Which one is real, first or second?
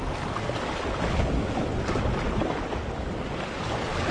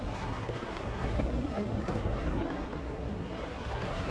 first